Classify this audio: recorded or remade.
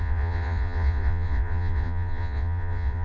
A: remade